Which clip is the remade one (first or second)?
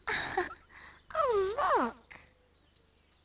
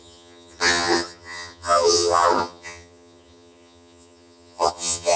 second